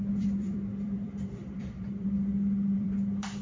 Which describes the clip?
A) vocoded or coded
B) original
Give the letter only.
A